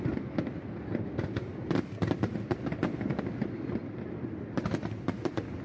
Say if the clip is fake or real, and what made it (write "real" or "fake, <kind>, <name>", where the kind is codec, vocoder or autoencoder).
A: real